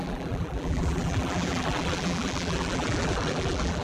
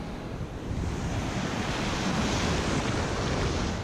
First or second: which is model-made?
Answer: first